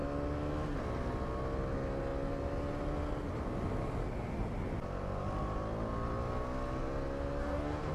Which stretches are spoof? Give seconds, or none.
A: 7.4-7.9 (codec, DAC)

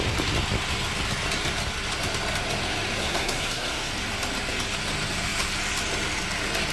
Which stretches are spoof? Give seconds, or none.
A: 3.0-3.9 (codec, SNAC)

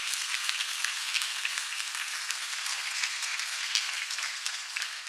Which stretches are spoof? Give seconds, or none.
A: 0.0-5.1 (codec, SNAC)

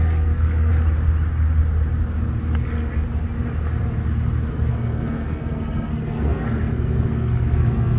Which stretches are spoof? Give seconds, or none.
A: 0.0-0.7 (codec, SNAC); 4.7-8.0